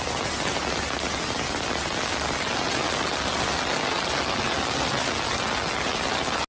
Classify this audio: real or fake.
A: real